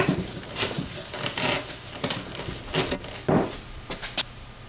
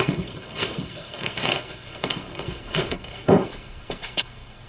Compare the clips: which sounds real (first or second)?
first